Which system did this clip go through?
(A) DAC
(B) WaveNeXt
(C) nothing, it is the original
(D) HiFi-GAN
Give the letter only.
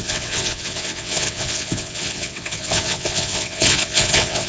B